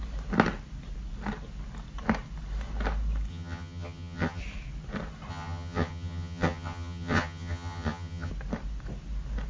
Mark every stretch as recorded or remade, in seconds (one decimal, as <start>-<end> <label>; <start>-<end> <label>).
0.0-3.3 recorded; 3.3-4.4 remade; 4.4-5.3 recorded; 5.3-8.3 remade; 8.3-9.5 recorded